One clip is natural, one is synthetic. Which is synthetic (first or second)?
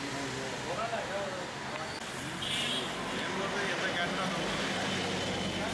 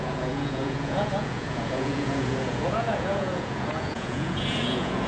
second